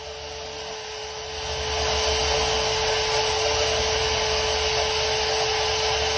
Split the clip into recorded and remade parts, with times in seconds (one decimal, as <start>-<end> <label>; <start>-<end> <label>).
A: 0.0-6.2 recorded